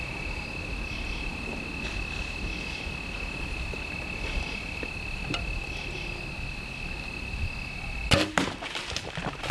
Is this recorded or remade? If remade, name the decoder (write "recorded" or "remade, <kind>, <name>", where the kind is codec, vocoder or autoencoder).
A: recorded